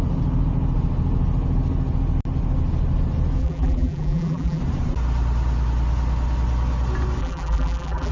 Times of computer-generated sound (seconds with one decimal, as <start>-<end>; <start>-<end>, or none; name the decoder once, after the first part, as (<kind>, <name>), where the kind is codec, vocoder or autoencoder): 3.4-4.6 (vocoder, BigVGAN v2); 7.2-8.1